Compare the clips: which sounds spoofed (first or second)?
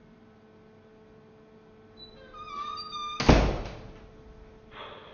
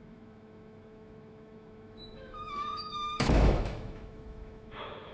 second